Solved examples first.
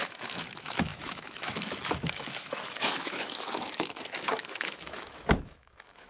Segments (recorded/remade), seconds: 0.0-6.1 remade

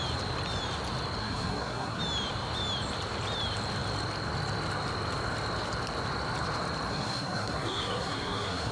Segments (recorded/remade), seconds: 0.0-1.2 recorded; 1.2-2.0 remade; 2.0-6.9 recorded; 6.9-8.7 remade

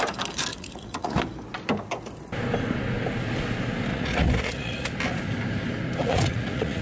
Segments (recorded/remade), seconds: 0.0-0.5 recorded; 0.5-1.2 remade; 1.2-3.9 recorded; 3.9-4.9 remade; 4.9-6.0 recorded; 6.0-6.8 remade

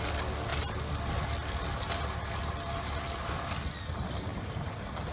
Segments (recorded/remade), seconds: 0.0-5.1 recorded

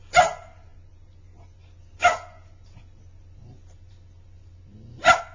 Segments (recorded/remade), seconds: 0.0-5.3 recorded

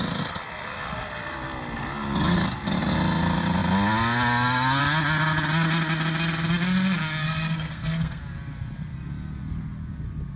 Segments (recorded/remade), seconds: 0.0-7.2 recorded; 7.2-8.2 remade; 8.2-10.4 recorded

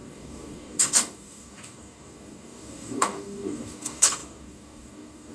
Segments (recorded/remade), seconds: 0.0-5.3 remade